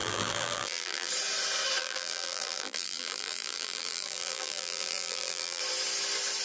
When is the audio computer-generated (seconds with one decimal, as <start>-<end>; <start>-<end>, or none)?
0.0-1.1; 1.8-5.6